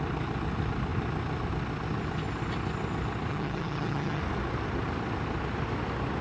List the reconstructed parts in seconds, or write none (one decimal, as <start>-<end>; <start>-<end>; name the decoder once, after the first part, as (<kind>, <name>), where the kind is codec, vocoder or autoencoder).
3.3-4.2 (vocoder, HiFi-GAN)